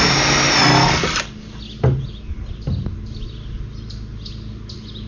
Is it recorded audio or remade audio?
recorded